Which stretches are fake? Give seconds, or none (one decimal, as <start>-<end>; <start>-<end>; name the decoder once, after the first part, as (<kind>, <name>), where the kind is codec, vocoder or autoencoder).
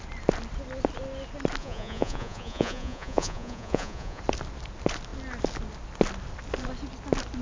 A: 1.6-4.2 (vocoder, Vocos)